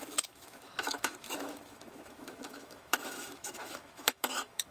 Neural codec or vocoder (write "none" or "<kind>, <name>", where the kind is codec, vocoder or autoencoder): autoencoder, DAC-VAE